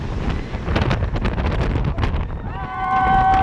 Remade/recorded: recorded